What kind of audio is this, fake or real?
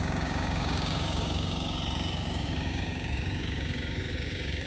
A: fake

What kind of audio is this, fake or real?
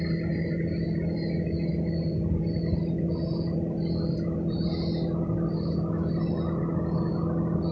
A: real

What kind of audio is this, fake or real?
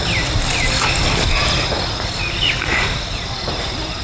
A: real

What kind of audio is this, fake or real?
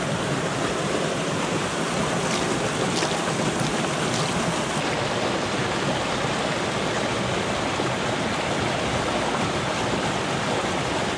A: real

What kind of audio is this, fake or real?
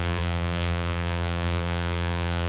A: fake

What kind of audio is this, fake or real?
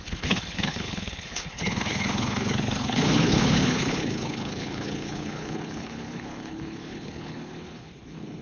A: fake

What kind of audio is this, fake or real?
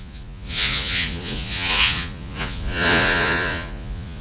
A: fake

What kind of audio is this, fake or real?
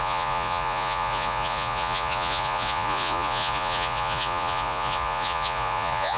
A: fake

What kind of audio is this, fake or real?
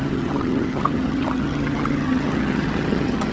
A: fake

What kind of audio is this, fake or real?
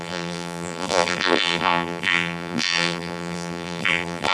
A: fake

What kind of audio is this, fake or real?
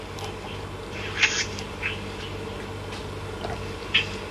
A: real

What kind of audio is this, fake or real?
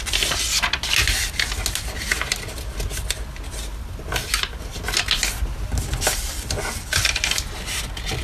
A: real